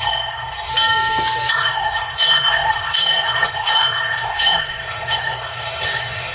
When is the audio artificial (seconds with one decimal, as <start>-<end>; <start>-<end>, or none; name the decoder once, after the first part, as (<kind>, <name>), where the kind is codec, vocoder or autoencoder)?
0.0-0.7 (codec, SNAC); 1.5-6.3

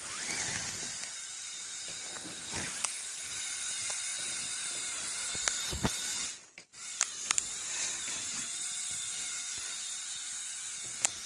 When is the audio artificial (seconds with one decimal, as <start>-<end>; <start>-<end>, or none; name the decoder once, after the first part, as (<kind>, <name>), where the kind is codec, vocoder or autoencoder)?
none

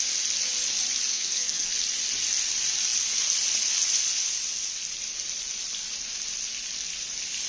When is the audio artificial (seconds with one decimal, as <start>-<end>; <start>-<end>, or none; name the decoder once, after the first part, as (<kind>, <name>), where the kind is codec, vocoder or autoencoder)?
1.1-1.7 (codec, SNAC)

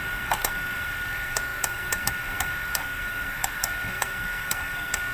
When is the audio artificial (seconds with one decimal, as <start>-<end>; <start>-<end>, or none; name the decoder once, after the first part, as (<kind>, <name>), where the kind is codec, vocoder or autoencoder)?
0.0-5.1 (codec, SNAC)

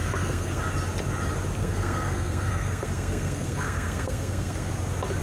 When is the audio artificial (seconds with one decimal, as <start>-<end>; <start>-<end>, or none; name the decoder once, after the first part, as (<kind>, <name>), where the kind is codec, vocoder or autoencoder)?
0.0-0.6 (codec, SNAC); 1.6-4.7

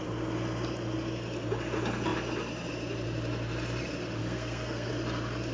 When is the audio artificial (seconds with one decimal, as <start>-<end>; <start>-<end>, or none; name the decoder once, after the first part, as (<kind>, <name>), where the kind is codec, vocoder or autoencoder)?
4.2-4.9 (codec, SNAC)

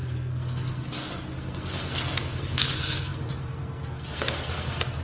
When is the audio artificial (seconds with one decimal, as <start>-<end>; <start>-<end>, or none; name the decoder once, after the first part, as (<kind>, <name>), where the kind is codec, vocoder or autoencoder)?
0.0-5.0 (codec, SNAC)